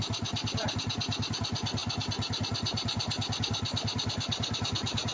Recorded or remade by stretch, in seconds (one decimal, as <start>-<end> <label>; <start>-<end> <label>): 0.0-5.1 recorded